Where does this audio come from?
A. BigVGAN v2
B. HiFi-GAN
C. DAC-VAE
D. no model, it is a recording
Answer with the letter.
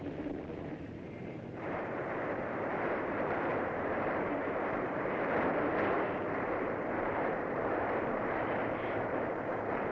A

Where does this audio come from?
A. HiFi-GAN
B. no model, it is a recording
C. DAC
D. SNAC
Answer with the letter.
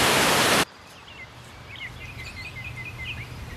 B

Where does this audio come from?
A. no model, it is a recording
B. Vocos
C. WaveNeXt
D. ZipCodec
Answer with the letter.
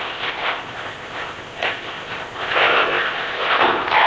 D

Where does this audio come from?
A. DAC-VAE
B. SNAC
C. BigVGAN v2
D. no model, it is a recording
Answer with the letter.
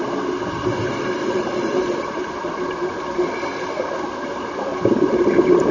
C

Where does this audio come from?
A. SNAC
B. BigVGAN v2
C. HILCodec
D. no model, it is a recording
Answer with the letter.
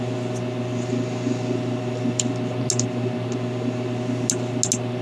D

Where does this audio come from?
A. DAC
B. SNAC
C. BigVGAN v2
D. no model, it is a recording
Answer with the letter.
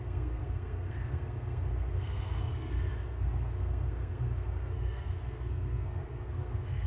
B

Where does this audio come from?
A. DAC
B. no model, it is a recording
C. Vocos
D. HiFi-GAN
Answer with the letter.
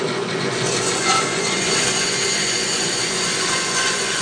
C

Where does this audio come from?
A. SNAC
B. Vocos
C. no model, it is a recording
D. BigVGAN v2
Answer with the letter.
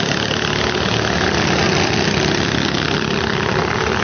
C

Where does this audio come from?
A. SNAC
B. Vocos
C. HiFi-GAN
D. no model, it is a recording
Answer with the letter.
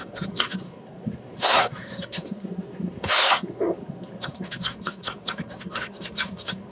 A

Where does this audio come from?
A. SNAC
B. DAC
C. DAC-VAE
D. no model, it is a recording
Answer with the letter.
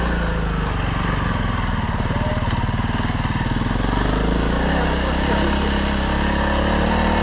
D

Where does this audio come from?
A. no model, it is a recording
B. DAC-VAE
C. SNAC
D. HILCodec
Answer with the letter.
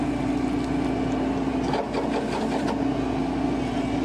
A